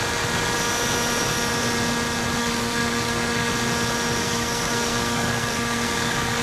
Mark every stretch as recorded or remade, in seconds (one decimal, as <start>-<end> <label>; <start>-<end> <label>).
0.0-2.4 recorded; 2.4-3.5 remade; 3.5-4.2 recorded; 4.2-6.4 remade